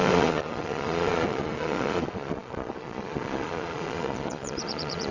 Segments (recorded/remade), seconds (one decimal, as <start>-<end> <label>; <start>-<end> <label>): 0.0-5.1 remade